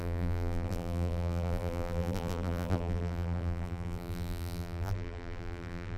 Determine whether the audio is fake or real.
fake